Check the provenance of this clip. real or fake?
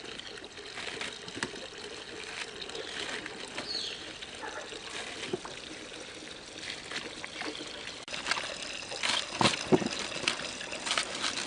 real